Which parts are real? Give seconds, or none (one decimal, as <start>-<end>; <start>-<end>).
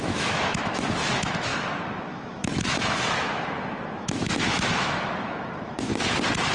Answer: 5.9-6.5